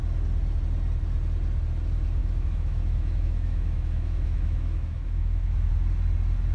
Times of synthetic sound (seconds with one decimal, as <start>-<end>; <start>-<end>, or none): 2.2-5.7